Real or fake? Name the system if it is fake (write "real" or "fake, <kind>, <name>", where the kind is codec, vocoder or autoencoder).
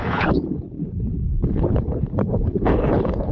fake, codec, HILCodec